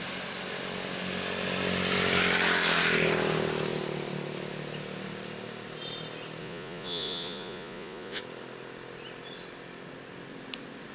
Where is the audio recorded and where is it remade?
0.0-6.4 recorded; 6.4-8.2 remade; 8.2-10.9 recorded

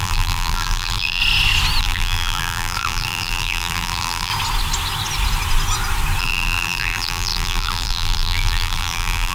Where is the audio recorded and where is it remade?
0.0-1.2 remade; 1.2-1.8 recorded; 1.8-4.3 remade; 4.3-6.2 recorded; 6.2-9.3 remade

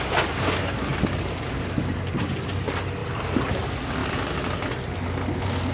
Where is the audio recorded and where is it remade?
0.0-3.0 recorded; 3.0-3.6 remade; 3.6-4.0 recorded; 4.0-4.6 remade; 4.6-5.7 recorded

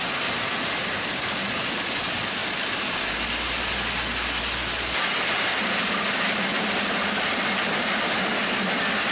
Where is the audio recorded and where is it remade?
0.0-9.1 recorded

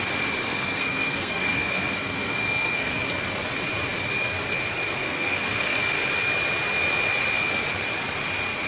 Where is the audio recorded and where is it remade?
0.0-0.4 recorded; 0.4-2.9 remade; 2.9-4.9 recorded; 4.9-5.8 remade; 5.8-8.7 recorded

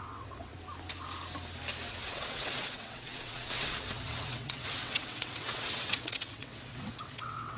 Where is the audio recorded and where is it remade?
0.0-0.5 remade; 0.5-1.9 recorded; 1.9-7.6 remade